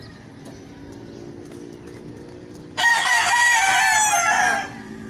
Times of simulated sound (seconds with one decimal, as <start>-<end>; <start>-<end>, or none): 2.9-3.7